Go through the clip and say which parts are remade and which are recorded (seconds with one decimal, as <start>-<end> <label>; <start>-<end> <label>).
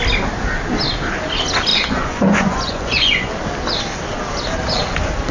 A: 0.0-1.7 recorded; 1.7-3.3 remade; 3.3-5.3 recorded